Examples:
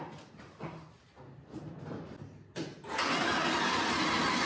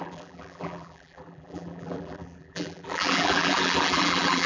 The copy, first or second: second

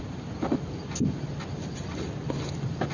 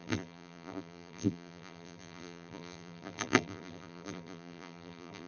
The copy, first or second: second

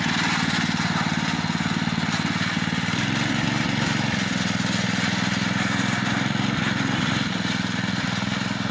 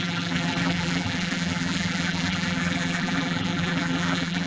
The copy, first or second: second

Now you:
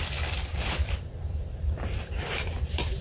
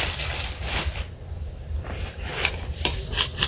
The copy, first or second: first